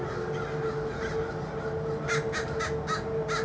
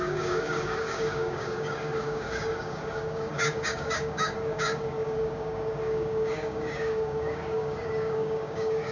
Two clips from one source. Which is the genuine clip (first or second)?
first